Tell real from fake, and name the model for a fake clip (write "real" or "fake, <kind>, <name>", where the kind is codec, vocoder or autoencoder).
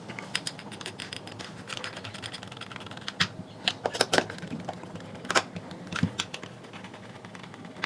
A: real